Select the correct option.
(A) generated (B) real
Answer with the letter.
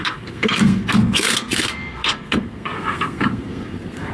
A